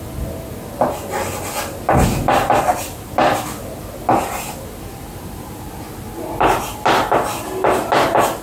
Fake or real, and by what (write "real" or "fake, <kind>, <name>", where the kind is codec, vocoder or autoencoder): real